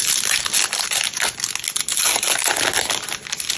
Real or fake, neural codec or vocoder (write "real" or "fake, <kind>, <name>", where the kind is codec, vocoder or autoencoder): real